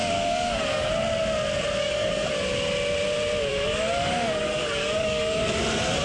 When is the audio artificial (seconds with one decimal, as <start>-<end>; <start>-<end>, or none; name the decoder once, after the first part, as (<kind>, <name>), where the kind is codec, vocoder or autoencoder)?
0.0-0.9 (codec, DAC); 1.8-2.3; 3.5-5.4